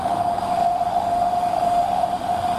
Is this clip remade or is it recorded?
remade